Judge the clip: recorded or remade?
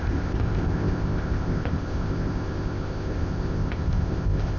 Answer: remade